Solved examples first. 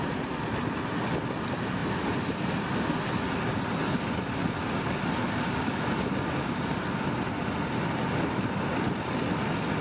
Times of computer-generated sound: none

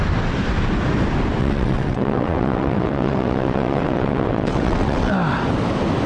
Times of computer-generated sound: 1.4-5.1 (vocoder, WaveNeXt)

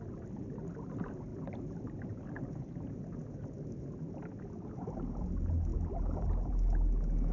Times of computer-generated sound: none

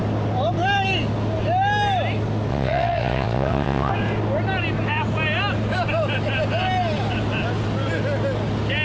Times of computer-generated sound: 2.5-3.9 (vocoder, WaveNeXt)